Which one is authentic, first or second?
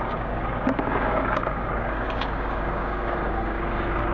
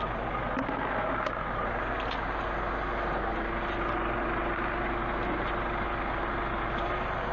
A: second